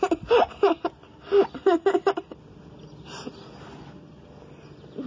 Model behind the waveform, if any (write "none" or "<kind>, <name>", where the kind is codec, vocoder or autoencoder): none